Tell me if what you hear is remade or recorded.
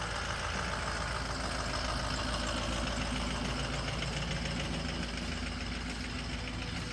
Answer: recorded